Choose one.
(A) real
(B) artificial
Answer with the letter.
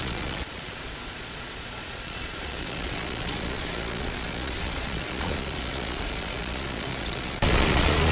B